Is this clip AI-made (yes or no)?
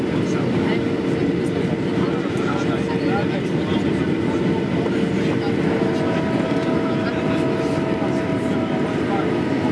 no